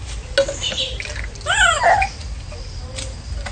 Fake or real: real